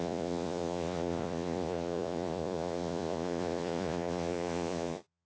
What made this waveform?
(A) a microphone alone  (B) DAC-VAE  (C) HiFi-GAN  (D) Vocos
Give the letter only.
D